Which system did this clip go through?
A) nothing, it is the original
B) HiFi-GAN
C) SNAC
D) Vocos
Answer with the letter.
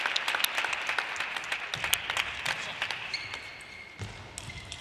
A